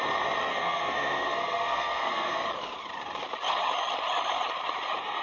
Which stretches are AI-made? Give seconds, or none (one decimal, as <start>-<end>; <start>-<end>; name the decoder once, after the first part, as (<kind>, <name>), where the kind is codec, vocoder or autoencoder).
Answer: 0.4-2.4 (codec, SNAC)